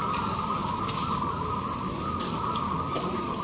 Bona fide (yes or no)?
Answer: yes